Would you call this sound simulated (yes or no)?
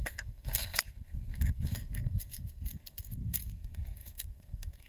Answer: yes